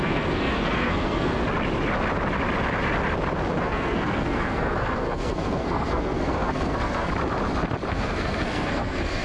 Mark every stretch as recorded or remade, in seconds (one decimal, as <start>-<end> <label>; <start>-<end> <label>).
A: 0.0-1.4 remade; 1.4-3.6 recorded; 3.6-7.1 remade; 7.1-7.9 recorded; 7.9-9.2 remade